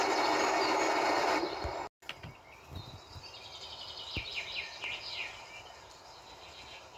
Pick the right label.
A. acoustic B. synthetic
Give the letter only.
A